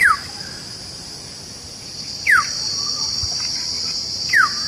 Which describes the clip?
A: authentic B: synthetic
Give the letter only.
A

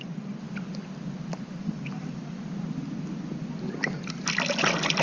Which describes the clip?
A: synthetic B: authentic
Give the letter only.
B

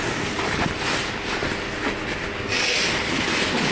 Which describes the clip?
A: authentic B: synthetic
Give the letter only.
A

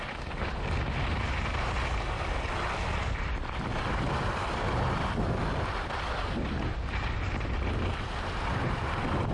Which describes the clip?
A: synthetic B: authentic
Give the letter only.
B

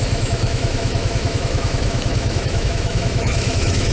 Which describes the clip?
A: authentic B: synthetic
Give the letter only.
B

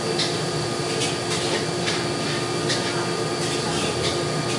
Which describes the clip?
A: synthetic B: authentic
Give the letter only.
B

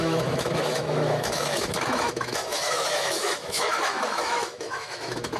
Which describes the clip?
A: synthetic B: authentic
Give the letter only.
A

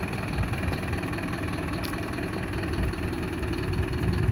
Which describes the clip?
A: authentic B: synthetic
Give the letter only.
A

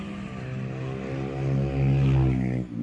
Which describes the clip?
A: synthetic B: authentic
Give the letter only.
B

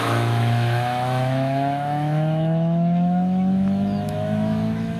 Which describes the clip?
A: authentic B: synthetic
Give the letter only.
B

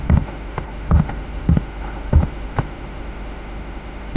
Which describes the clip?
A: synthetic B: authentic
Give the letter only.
A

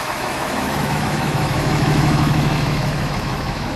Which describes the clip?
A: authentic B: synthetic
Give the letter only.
B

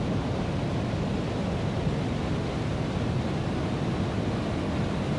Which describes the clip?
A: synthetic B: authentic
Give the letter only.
B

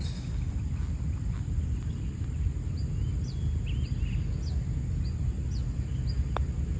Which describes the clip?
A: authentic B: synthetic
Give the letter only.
A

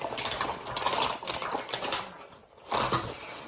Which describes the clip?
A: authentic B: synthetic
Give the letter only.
A